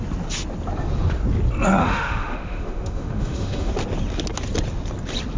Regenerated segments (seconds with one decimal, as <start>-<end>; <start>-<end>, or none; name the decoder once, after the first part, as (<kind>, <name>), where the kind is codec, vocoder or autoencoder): 1.8-3.7 (autoencoder, DAC-VAE)